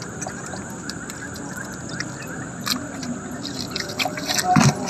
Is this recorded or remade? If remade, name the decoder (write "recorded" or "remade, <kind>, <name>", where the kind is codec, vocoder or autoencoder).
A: recorded